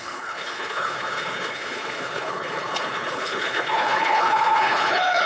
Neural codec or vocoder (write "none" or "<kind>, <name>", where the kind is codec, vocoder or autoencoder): codec, HILCodec